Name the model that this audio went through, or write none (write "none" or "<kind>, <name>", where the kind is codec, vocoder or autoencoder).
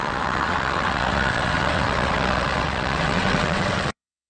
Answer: vocoder, WaveNeXt